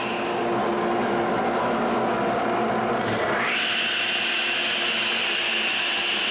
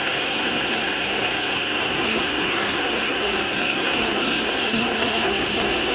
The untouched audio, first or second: first